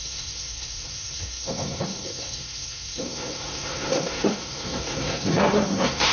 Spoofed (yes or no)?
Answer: yes